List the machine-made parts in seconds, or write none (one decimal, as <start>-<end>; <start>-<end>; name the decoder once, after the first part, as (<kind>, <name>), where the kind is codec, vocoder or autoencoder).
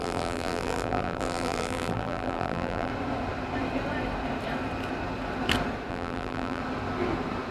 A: 0.0-2.9 (vocoder, BigVGAN v2); 5.9-6.6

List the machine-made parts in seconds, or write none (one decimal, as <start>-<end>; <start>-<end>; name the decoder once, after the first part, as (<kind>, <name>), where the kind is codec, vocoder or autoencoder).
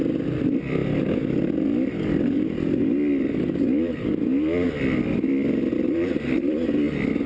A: none